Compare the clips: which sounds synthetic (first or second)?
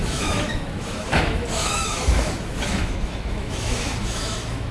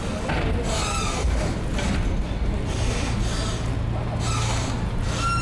first